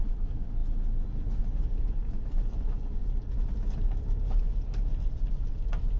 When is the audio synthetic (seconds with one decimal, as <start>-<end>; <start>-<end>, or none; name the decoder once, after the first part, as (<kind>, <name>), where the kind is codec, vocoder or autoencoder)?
none